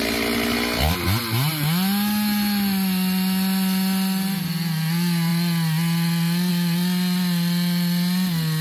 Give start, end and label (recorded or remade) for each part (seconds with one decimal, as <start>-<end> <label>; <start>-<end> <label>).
0.0-8.6 recorded